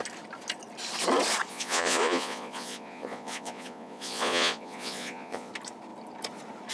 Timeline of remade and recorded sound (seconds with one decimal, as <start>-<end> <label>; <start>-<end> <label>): 0.0-1.5 recorded; 1.5-5.5 remade; 5.5-6.7 recorded